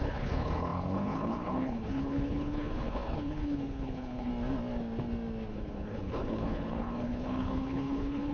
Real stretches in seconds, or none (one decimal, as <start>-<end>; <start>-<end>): 4.3-5.5